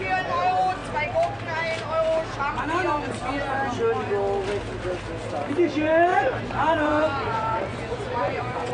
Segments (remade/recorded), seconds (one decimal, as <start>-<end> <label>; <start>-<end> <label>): 0.0-6.1 recorded; 6.1-8.7 remade